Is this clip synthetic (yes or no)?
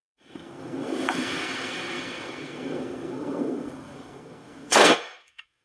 yes